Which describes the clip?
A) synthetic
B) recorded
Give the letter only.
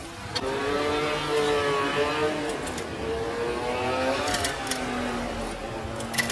B